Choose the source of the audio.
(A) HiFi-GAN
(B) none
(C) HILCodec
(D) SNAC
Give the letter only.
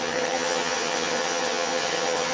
A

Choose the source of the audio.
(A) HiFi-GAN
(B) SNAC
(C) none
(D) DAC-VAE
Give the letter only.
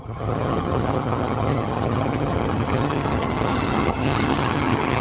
A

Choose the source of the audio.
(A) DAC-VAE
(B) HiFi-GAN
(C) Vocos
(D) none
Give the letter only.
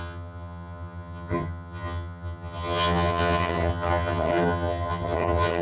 B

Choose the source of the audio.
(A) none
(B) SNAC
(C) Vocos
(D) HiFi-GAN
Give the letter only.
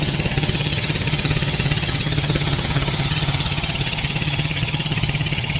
D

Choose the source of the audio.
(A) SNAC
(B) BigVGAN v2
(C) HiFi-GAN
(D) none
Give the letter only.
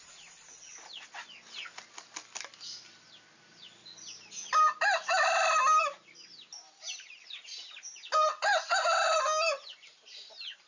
D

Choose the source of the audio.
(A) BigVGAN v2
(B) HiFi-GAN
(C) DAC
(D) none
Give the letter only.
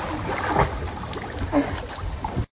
D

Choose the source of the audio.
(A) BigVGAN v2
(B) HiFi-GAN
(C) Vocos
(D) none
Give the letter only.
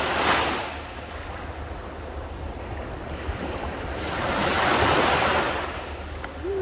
D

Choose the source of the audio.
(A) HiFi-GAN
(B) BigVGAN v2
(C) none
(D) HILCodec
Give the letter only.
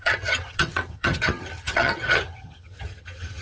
A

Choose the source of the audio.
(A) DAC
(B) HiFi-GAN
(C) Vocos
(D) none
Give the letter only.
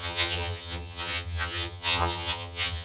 B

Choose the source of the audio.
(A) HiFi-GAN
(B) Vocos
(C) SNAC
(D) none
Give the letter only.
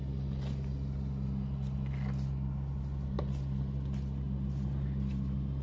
D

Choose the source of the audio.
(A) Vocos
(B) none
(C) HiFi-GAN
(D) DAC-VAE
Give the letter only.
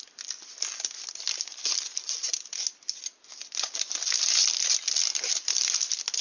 B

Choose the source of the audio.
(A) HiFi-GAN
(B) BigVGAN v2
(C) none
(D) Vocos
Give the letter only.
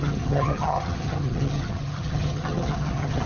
A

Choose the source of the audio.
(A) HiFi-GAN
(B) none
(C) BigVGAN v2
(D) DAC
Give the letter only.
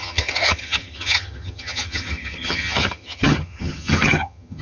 A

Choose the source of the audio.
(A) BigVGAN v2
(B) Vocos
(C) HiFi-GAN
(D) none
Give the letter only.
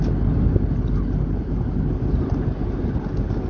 D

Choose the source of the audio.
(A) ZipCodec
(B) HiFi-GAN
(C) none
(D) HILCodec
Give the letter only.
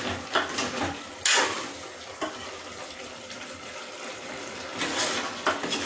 C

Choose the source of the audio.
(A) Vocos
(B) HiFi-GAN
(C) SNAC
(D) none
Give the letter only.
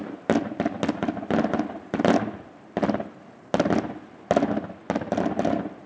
D